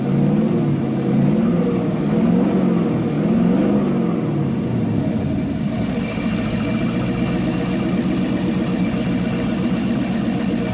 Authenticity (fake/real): real